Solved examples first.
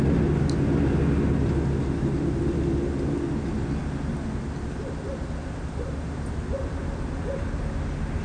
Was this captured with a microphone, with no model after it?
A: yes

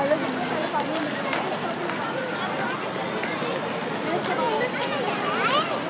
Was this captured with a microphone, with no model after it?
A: yes